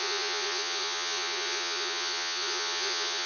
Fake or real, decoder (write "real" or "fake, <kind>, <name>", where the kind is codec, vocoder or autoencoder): fake, vocoder, Vocos